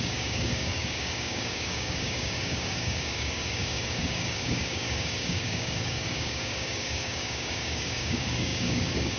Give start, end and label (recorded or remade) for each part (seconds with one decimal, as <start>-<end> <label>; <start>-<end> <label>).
0.0-9.2 remade